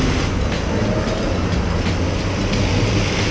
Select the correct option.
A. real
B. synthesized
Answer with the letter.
A